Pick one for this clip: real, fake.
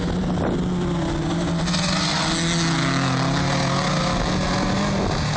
real